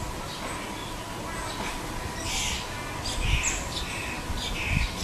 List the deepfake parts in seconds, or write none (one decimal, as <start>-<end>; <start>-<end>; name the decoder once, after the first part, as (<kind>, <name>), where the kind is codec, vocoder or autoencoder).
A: none